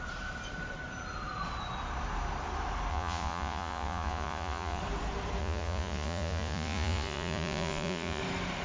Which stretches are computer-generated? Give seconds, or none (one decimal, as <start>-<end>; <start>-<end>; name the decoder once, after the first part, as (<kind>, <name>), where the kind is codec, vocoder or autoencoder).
2.9-4.8 (vocoder, Vocos); 5.4-8.2